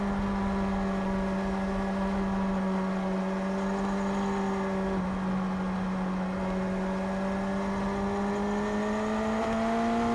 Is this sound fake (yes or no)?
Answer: no